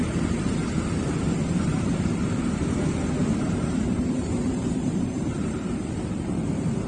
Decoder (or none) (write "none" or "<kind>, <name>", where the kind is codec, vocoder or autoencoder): vocoder, BigVGAN v2